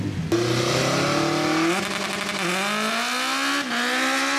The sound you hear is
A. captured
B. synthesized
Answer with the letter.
A